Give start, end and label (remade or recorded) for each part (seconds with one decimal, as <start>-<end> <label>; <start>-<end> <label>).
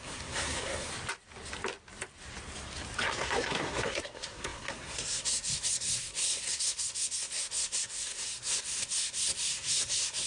0.0-0.9 remade; 0.9-3.1 recorded; 3.1-10.3 remade